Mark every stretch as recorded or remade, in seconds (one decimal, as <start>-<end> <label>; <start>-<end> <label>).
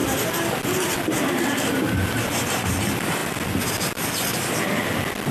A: 0.0-5.3 recorded